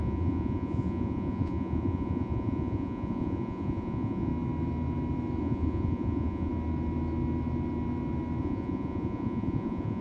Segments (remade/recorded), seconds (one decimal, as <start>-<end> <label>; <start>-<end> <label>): 0.0-4.3 remade; 4.3-5.4 recorded; 5.4-6.5 remade; 6.5-8.4 recorded; 8.4-10.0 remade